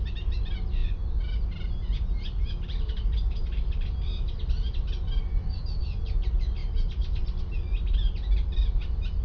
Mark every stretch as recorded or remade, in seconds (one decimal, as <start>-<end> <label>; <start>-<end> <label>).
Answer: 0.0-9.2 recorded